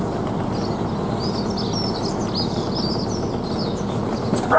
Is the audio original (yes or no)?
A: yes